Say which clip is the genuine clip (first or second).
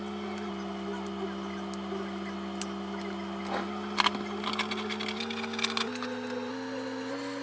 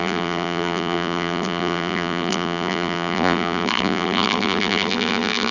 first